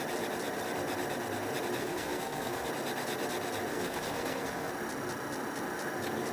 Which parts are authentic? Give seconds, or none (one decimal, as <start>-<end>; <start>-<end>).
0.0-1.8; 2.7-3.7; 4.7-6.3